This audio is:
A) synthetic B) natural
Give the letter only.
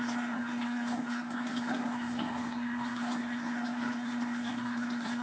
A